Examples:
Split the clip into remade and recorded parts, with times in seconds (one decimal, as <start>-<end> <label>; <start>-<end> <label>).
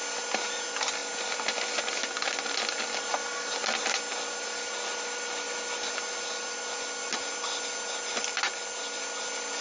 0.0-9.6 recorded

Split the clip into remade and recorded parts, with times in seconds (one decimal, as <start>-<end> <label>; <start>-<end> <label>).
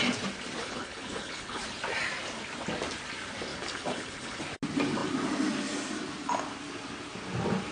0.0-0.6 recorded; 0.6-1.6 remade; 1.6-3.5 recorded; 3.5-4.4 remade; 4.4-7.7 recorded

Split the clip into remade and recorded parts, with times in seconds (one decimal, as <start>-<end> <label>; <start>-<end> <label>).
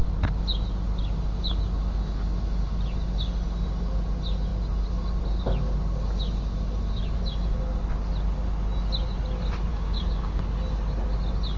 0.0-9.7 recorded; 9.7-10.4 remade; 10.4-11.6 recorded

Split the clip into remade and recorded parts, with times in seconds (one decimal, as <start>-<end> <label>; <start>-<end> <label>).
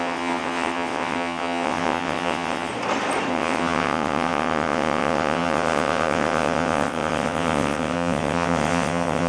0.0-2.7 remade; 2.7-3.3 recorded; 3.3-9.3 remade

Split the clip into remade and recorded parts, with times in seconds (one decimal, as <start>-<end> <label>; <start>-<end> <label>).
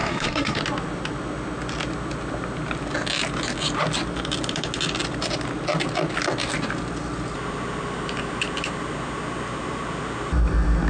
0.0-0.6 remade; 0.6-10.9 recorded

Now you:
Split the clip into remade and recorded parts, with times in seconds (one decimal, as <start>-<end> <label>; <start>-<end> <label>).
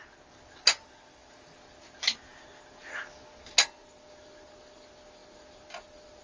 0.0-6.2 recorded